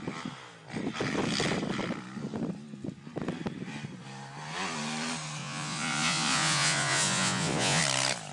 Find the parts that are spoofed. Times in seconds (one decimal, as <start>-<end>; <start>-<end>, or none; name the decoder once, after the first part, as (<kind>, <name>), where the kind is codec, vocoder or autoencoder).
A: 5.4-7.8 (vocoder, Vocos)

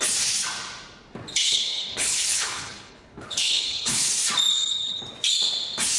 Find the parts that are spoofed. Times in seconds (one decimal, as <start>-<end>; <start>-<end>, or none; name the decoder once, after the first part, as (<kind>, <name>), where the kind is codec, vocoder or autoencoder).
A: 1.4-4.1 (codec, HILCodec); 4.5-5.0

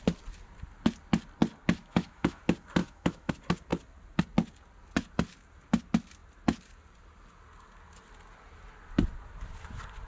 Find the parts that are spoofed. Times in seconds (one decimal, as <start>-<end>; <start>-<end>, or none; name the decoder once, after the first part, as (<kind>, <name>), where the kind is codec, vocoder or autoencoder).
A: 1.8-2.4 (autoencoder, DAC-VAE); 2.8-3.3

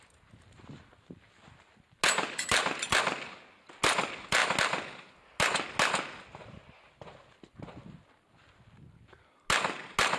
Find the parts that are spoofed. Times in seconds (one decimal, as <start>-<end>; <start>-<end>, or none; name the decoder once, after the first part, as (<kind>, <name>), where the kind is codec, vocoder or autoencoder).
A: none